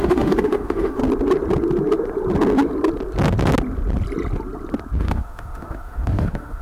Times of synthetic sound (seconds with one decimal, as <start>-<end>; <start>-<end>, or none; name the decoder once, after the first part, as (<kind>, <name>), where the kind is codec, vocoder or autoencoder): 0.0-1.0 (autoencoder, DAC-VAE); 5.0-6.6